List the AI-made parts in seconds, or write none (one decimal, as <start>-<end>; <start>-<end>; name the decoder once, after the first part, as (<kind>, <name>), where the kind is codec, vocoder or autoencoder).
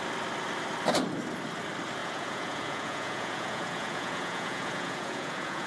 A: 2.0-5.7 (vocoder, Vocos)